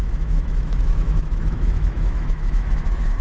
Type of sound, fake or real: fake